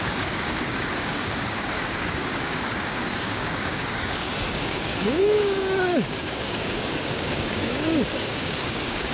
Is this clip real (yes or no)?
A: no